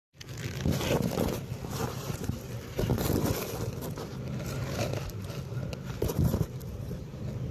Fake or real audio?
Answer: fake